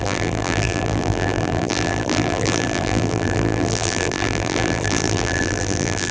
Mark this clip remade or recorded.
remade